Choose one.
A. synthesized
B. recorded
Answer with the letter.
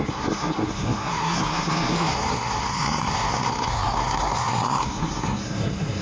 A